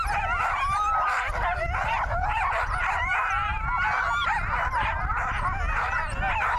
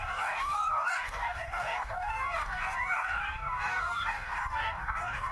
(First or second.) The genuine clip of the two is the first